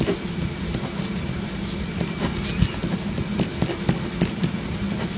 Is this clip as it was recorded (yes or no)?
yes